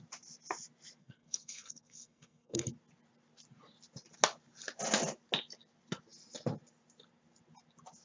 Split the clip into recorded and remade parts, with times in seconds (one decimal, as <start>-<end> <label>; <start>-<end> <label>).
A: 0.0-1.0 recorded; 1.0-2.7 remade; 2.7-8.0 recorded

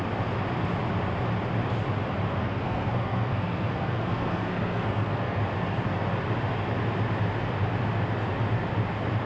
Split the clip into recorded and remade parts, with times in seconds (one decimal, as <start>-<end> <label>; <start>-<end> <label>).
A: 0.0-2.4 recorded; 2.4-5.4 remade; 5.4-9.3 recorded

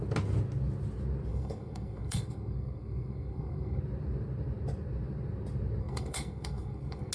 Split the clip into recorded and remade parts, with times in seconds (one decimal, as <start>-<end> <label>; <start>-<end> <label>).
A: 0.0-1.3 recorded; 1.3-3.8 remade; 3.8-5.8 recorded; 5.8-7.1 remade

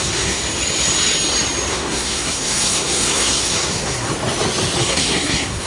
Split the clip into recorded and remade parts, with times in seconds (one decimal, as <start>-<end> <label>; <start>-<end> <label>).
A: 0.0-0.4 remade; 0.4-1.7 recorded; 1.7-4.1 remade; 4.1-4.8 recorded; 4.8-5.7 remade